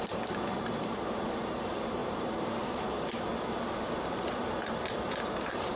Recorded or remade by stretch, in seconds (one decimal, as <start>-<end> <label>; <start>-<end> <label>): 0.0-3.3 remade; 3.3-4.3 recorded; 4.3-5.8 remade